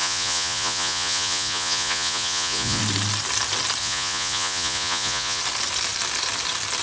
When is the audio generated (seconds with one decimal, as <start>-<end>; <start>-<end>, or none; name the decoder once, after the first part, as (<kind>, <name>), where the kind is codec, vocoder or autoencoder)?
0.0-2.8 (vocoder, Vocos); 3.8-5.4